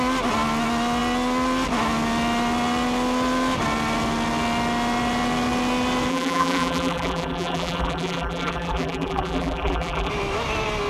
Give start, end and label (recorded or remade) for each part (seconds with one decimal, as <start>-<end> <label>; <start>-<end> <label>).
0.0-6.1 recorded; 6.1-10.1 remade; 10.1-10.9 recorded